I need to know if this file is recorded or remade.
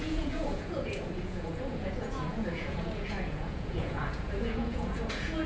remade